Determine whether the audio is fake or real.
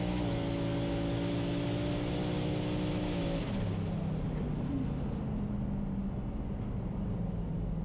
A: real